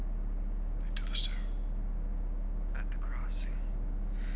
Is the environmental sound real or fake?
real